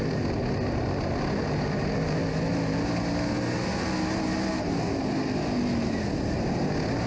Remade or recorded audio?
recorded